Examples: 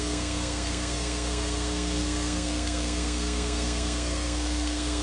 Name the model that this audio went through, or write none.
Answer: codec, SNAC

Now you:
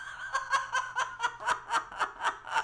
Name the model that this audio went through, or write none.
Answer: none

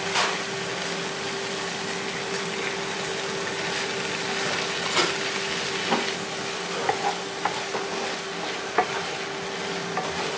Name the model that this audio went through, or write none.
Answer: none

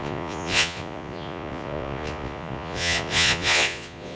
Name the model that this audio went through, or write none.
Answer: vocoder, Vocos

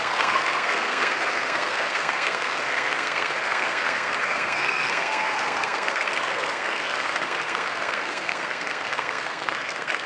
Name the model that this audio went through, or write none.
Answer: codec, SNAC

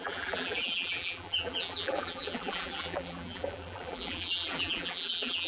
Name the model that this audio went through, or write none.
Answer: vocoder, BigVGAN v2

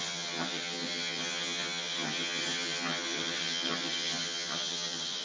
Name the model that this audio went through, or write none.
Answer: vocoder, HiFi-GAN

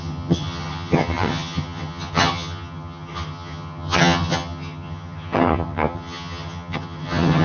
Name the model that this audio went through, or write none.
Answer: vocoder, HiFi-GAN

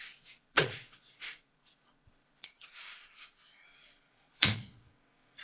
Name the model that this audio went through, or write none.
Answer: vocoder, Vocos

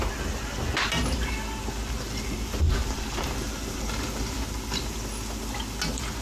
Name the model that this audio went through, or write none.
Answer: none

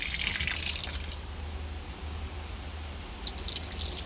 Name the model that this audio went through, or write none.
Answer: none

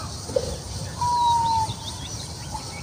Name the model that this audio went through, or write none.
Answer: vocoder, BigVGAN v2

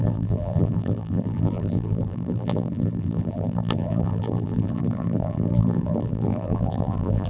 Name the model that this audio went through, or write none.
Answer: vocoder, BigVGAN v2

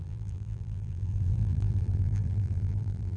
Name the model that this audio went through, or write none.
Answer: vocoder, BigVGAN v2